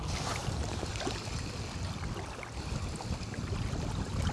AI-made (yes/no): no